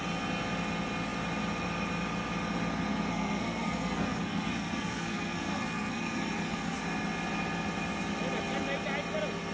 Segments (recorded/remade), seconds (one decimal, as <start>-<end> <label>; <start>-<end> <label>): 0.0-3.1 recorded; 3.1-6.8 remade; 6.8-9.5 recorded